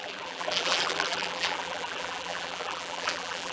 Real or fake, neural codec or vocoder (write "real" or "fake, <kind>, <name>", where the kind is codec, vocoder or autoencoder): fake, vocoder, BigVGAN v2